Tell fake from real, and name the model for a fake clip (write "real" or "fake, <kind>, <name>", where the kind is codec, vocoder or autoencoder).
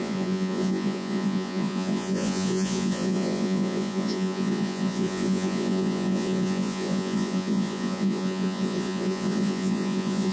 fake, vocoder, Vocos